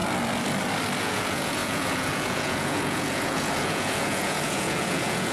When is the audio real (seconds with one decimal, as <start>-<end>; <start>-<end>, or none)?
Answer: 0.0-1.0